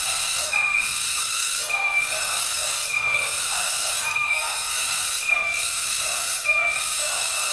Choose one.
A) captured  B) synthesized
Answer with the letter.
B